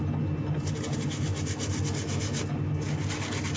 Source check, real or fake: real